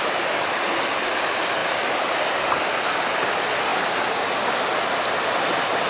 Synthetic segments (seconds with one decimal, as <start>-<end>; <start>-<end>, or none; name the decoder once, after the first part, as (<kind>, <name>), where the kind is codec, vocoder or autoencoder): 1.6-2.2 (vocoder, BigVGAN v2)